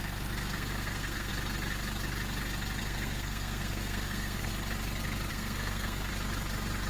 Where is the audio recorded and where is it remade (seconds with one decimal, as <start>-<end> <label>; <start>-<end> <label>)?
0.0-1.3 remade; 1.3-2.8 recorded; 2.8-4.5 remade; 4.5-5.3 recorded; 5.3-6.1 remade; 6.1-6.9 recorded